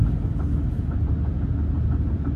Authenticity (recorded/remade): recorded